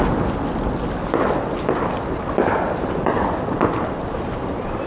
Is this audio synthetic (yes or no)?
no